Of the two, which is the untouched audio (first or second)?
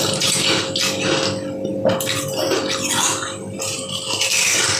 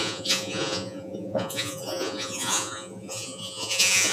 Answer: first